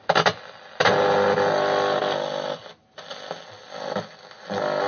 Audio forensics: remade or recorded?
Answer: recorded